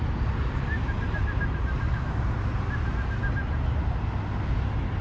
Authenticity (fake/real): real